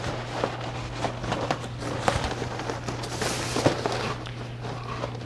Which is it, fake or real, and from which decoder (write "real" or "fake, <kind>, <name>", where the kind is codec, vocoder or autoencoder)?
real